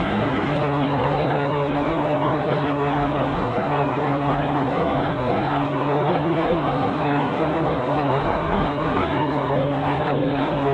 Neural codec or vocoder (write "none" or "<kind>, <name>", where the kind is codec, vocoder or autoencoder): codec, SNAC